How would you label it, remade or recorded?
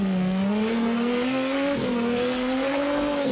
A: remade